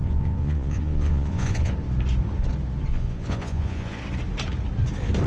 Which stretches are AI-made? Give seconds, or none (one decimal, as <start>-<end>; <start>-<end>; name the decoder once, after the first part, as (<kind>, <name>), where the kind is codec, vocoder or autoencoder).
0.0-1.7 (vocoder, Vocos); 2.9-4.0